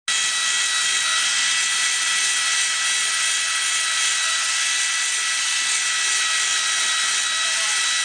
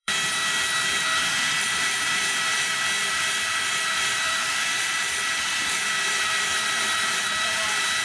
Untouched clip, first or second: first